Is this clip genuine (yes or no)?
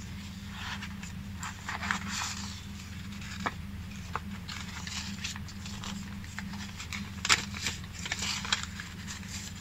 no